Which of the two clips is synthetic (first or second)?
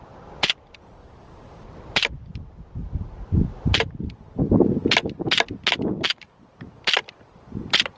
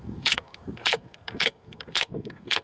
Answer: second